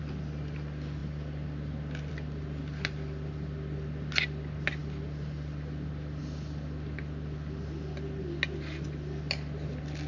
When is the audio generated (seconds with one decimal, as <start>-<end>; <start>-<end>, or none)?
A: none